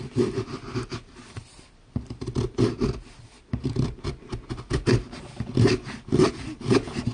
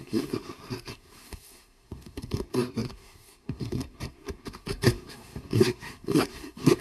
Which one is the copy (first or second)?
second